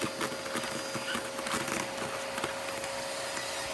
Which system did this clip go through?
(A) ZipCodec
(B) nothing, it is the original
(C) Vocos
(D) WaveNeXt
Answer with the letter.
B